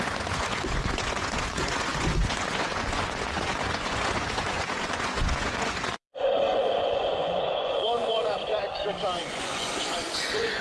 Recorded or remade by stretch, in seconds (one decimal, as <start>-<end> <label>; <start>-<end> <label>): 0.0-8.5 remade; 8.5-9.2 recorded; 9.2-10.6 remade